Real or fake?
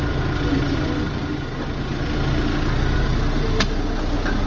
real